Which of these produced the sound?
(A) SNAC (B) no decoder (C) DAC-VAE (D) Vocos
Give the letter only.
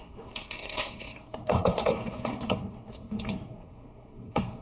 A